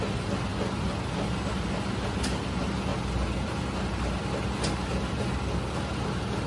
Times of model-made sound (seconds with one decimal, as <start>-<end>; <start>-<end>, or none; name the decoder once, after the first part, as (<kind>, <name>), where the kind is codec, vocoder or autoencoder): none